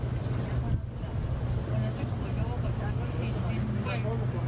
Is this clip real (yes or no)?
yes